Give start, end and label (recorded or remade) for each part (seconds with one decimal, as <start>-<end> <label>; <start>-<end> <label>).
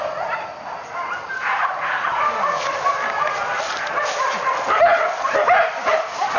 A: 0.0-6.4 recorded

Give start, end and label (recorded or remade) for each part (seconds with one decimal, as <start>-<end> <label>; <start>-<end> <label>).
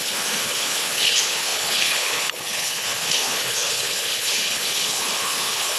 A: 0.0-5.8 remade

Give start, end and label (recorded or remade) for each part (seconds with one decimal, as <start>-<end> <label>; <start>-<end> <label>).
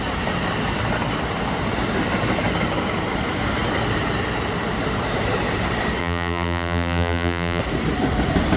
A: 0.0-6.0 recorded; 6.0-7.6 remade; 7.6-8.6 recorded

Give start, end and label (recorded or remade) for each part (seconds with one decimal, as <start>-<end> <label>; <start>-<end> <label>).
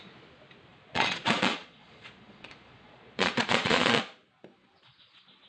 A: 0.0-0.7 recorded; 0.7-4.0 remade; 4.0-5.5 recorded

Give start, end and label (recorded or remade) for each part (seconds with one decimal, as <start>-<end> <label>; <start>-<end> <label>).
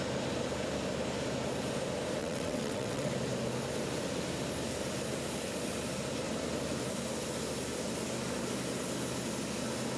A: 0.0-2.2 recorded; 2.2-3.1 remade; 3.1-10.0 recorded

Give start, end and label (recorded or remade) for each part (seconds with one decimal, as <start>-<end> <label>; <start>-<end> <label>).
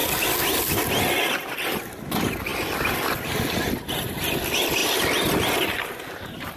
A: 0.0-6.6 recorded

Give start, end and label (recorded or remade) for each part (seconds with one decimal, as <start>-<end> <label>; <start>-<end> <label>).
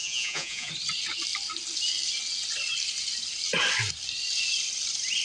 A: 0.0-0.7 remade; 0.7-5.2 recorded